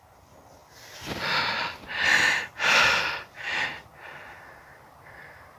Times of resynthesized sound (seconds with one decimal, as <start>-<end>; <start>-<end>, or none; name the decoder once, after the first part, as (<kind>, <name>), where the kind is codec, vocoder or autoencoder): none